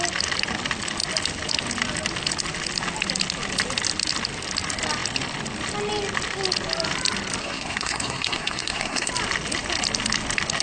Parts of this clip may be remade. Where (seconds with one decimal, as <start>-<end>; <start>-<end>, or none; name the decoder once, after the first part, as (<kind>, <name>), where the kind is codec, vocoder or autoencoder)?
7.4-9.1 (codec, SNAC)